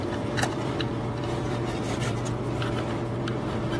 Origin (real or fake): fake